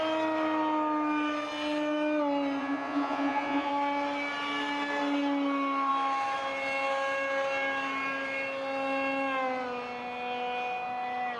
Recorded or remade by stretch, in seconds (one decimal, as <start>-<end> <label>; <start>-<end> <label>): 0.0-2.6 recorded; 2.6-3.7 remade; 3.7-11.4 recorded